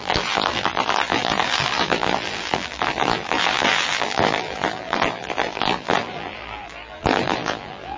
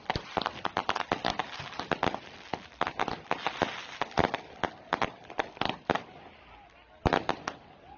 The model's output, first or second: first